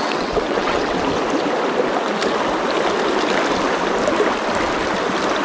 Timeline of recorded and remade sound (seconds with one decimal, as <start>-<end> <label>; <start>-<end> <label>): 0.0-1.0 remade; 1.0-5.4 recorded